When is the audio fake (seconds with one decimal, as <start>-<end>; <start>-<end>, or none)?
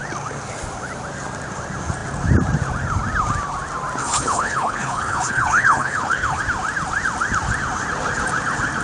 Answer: 4.0-6.4